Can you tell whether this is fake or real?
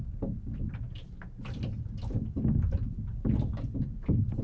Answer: real